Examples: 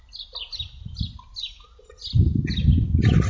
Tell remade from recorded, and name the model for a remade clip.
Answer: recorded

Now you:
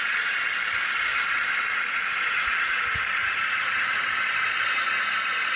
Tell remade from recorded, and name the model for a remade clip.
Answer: remade, vocoder, BigVGAN v2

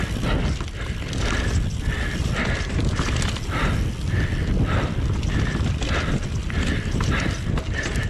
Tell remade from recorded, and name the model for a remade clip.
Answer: recorded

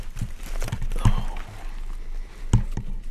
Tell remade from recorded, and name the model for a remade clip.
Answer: recorded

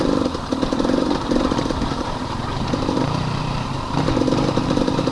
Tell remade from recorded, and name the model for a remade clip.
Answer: remade, vocoder, BigVGAN v2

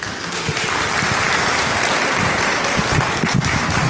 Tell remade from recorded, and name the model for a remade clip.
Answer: recorded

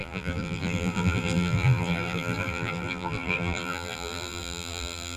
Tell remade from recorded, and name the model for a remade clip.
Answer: remade, vocoder, BigVGAN v2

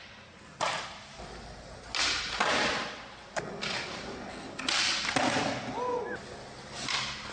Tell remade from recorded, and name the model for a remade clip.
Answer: recorded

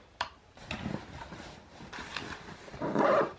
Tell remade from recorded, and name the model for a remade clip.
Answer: remade, vocoder, BigVGAN v2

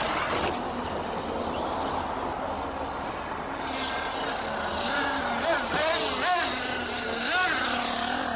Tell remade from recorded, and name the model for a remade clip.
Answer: recorded